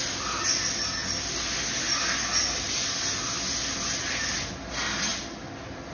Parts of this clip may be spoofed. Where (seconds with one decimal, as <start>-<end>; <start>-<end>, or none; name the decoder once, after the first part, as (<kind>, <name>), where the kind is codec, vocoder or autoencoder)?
none